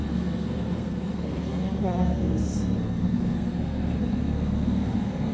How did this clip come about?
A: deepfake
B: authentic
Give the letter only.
A